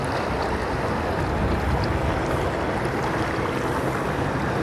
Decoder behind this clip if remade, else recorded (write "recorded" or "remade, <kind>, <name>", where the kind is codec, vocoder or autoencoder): recorded